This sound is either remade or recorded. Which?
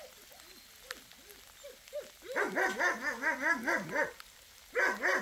recorded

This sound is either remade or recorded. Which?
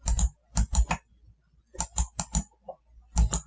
recorded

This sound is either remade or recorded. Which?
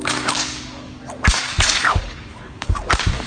remade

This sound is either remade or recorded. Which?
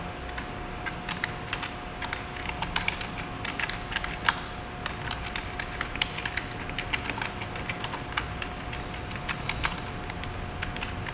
recorded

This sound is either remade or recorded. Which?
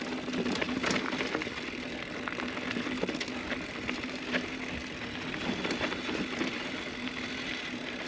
recorded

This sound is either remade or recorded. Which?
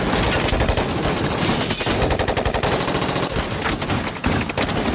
recorded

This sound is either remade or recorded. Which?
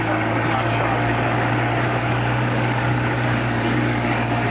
remade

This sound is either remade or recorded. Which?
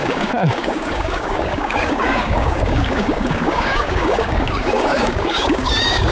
remade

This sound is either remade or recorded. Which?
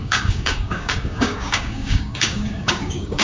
remade